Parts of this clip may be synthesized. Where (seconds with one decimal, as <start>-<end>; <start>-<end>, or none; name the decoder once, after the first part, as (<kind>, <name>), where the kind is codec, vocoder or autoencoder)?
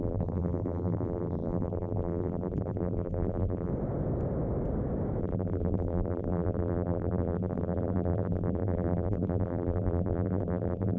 0.0-3.7 (vocoder, BigVGAN v2); 5.2-11.0